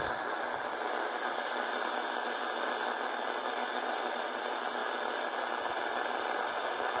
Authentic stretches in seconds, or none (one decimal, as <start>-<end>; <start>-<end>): 0.0-7.0